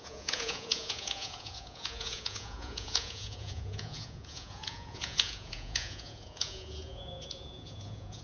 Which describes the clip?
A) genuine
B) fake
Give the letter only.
B